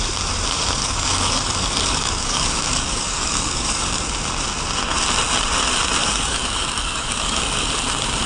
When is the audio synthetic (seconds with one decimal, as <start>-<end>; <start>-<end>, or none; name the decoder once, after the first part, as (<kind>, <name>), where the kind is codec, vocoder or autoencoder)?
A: 0.8-4.0 (codec, DAC); 6.0-7.7